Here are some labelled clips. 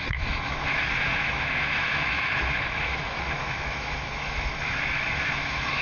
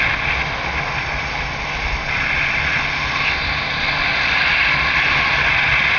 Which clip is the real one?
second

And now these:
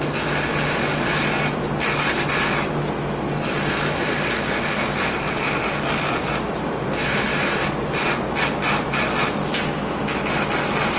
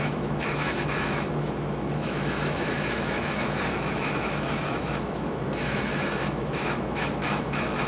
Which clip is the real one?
first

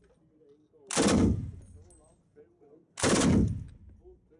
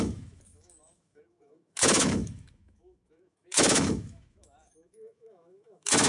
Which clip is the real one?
first